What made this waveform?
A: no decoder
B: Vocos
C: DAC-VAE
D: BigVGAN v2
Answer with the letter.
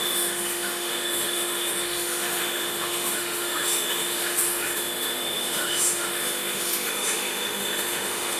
C